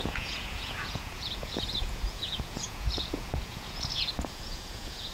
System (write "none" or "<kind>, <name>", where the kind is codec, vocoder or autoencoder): vocoder, Vocos